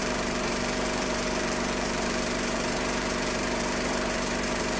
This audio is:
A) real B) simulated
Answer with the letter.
B